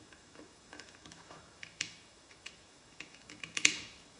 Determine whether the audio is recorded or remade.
remade